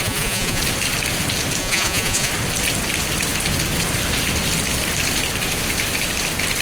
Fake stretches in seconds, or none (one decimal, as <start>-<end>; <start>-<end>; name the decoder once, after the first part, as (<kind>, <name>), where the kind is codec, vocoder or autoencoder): 0.0-0.6 (vocoder, Vocos); 1.6-2.3